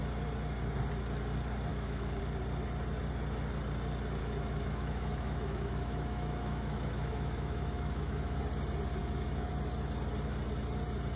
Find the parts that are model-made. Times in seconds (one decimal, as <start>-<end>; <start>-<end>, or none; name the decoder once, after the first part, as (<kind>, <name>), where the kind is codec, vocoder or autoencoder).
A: 1.7-2.2 (autoencoder, DAC-VAE); 4.2-8.4; 9.0-9.5